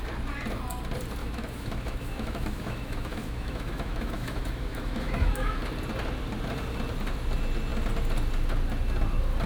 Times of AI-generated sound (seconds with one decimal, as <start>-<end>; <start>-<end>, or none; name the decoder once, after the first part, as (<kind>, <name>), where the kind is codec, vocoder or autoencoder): 1.2-5.6 (autoencoder, DAC-VAE)